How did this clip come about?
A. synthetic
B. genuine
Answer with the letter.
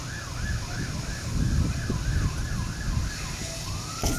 B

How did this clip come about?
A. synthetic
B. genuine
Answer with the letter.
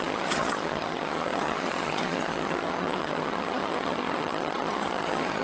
A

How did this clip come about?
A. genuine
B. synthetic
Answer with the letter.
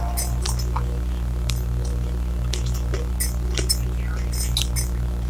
A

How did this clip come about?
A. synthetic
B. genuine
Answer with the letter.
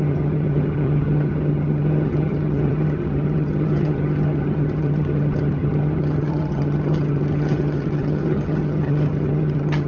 A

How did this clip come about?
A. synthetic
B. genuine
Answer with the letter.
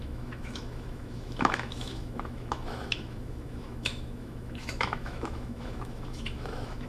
A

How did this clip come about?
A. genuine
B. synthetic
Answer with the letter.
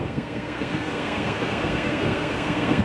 B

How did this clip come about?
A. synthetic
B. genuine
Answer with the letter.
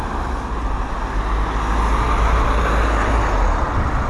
B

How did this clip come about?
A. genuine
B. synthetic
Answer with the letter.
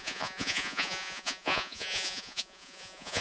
B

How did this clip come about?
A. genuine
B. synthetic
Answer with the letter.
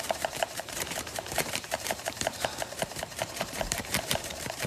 B